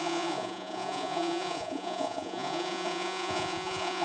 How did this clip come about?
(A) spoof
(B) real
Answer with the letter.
A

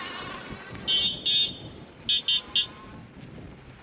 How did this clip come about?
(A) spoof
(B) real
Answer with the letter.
B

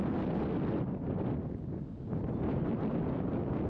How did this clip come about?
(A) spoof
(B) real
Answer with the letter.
B